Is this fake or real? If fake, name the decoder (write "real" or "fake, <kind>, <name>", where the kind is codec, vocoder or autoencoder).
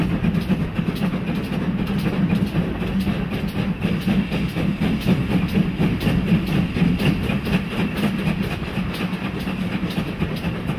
real